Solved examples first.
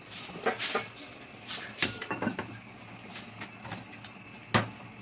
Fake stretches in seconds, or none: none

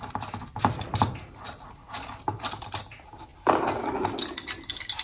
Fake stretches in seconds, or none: none

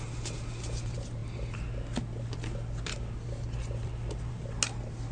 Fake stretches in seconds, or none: none

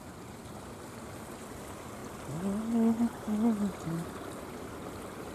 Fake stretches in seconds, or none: none

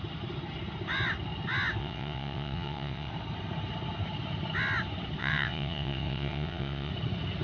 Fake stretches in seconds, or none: 1.8-3.1; 5.2-6.9

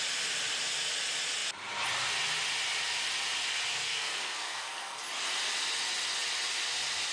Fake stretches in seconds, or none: 3.7-5.0